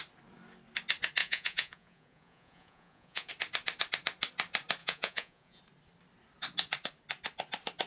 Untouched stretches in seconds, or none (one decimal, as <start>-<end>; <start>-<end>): 0.0-1.2; 3.3-4.8; 5.6-7.9